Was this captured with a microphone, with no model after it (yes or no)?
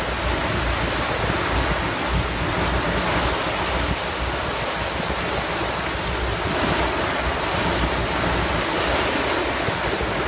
yes